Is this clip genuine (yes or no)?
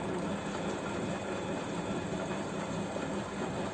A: yes